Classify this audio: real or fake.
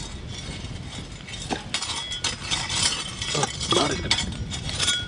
real